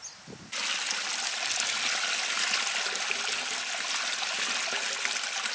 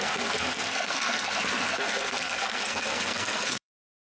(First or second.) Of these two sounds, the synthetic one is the second